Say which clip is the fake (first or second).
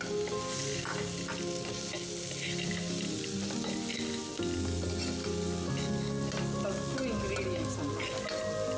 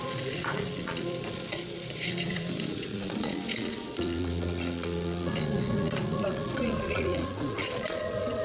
second